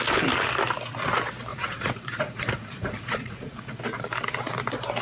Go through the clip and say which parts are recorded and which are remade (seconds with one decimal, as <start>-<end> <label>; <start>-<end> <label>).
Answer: 0.0-1.5 recorded; 1.5-3.8 remade; 3.8-5.0 recorded